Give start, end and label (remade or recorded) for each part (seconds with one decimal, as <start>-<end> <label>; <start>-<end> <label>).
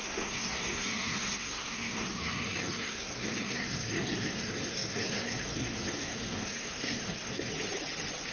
0.0-7.5 remade; 7.5-8.3 recorded